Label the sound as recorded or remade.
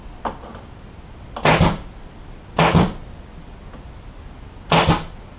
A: recorded